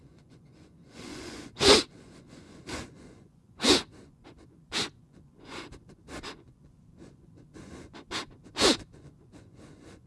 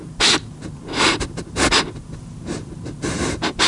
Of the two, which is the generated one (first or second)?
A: first